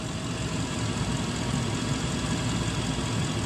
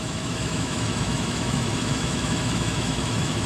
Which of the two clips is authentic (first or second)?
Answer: first